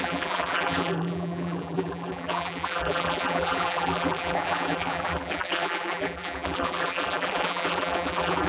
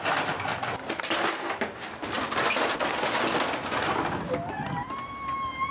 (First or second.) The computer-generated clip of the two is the first